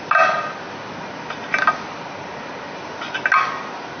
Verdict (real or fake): real